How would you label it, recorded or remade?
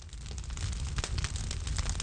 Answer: recorded